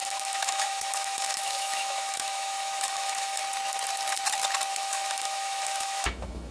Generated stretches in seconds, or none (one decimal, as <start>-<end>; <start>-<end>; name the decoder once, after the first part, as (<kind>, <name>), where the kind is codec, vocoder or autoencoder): 0.0-3.4 (autoencoder, DAC-VAE); 4.7-6.5